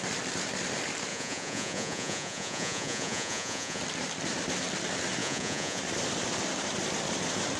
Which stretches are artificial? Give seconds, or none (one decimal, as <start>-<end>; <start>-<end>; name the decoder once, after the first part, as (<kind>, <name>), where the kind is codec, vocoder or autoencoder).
1.1-3.8 (vocoder, Vocos); 5.2-5.8